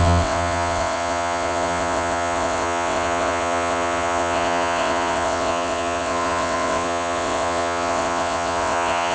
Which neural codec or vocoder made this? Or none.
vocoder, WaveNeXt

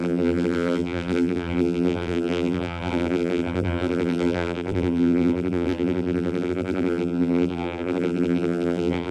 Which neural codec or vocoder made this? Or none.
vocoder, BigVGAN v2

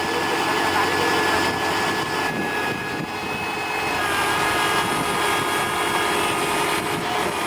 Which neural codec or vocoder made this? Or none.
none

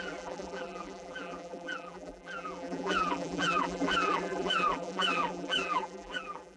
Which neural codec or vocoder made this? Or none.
vocoder, BigVGAN v2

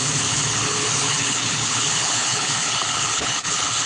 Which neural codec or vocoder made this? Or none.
codec, HILCodec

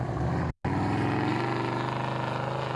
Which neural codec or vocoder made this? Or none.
none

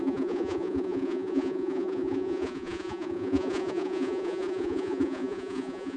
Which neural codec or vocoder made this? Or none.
vocoder, Vocos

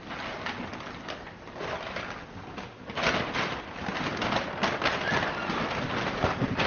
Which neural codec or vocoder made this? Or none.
none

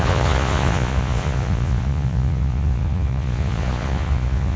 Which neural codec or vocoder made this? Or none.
vocoder, Vocos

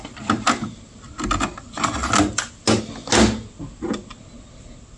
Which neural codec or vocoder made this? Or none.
none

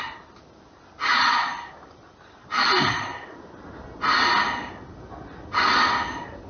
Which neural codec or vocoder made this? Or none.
none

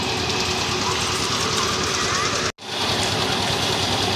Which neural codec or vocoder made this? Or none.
none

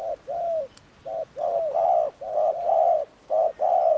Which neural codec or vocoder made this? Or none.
none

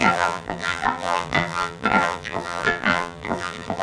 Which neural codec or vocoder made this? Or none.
vocoder, BigVGAN v2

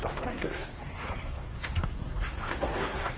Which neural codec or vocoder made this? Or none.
codec, SNAC